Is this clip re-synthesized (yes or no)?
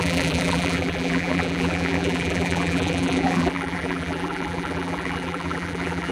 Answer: yes